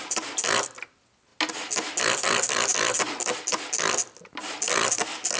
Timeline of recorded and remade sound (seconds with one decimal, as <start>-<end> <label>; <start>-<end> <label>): 0.0-5.4 recorded